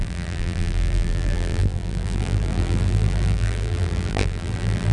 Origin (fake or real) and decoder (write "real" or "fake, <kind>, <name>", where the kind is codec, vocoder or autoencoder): fake, vocoder, BigVGAN v2